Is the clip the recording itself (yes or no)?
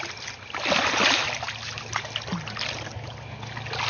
yes